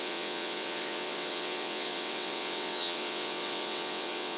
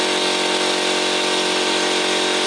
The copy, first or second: first